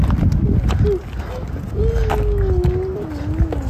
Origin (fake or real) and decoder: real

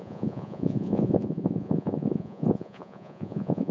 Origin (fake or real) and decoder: fake, vocoder, Vocos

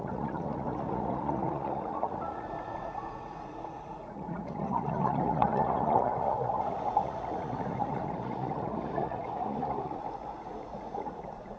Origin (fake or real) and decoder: fake, vocoder, Vocos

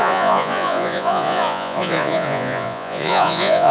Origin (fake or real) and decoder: fake, vocoder, Vocos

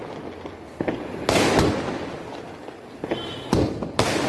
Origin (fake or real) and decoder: real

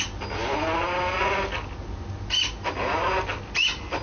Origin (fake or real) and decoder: real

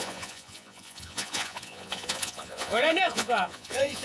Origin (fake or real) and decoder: fake, vocoder, Vocos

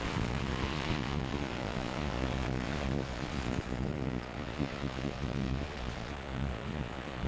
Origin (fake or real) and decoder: fake, vocoder, Vocos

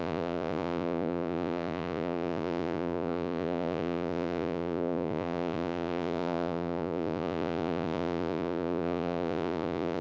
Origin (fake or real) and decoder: fake, vocoder, Vocos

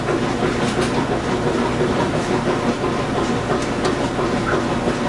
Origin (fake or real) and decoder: real